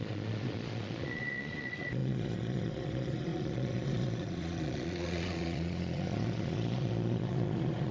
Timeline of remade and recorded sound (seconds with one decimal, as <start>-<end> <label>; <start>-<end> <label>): 0.0-7.9 remade